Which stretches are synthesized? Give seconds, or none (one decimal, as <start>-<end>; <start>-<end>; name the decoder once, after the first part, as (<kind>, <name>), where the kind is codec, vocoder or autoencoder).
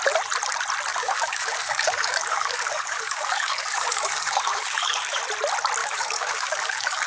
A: 0.9-5.2 (codec, DAC); 5.8-7.1